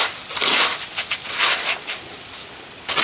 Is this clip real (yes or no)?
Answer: yes